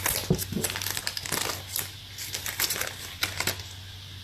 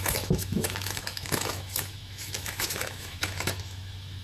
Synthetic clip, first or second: second